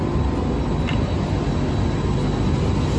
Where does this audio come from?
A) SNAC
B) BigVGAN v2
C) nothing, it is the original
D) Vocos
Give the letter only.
C